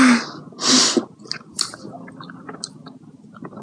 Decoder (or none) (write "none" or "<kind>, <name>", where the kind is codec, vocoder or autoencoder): none